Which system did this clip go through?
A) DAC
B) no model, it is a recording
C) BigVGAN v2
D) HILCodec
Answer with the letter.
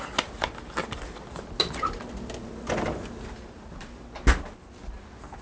B